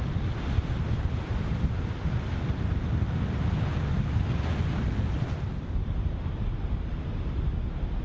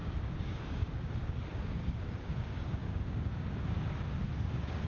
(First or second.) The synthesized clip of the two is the second